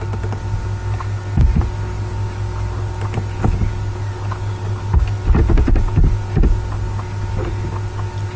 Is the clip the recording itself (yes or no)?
yes